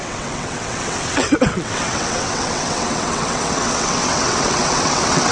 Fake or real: fake